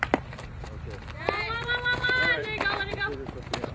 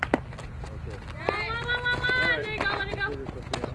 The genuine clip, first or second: second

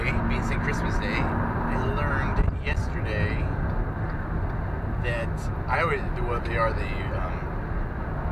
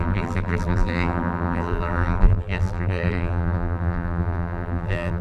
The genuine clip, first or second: first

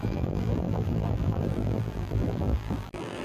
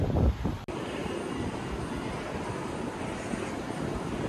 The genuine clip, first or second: second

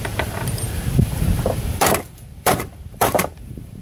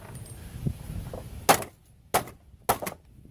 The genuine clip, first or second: second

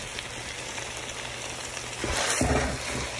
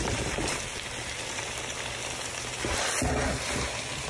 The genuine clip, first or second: first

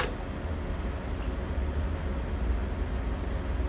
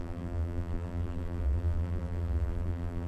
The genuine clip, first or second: first